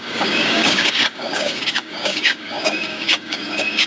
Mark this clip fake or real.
fake